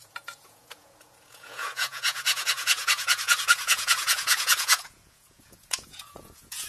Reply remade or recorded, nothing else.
remade